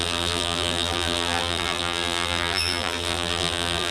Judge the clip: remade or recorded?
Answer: remade